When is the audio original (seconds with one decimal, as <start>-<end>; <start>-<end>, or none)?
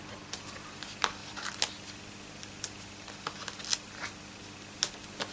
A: 0.0-5.3